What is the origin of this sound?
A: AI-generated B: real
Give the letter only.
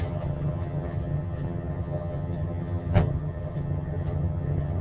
A